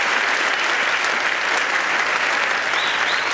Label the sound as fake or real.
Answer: real